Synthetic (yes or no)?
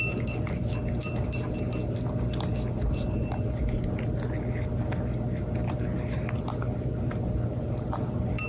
no